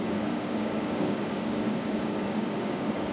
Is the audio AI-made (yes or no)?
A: yes